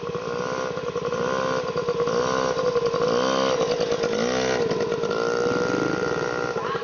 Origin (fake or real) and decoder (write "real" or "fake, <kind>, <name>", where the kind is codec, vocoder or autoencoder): real